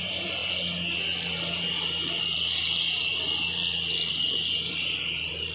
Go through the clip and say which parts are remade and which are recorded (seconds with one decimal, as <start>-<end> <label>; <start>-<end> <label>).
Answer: 0.0-0.4 remade; 0.4-1.7 recorded; 1.7-3.1 remade; 3.1-4.1 recorded; 4.1-5.5 remade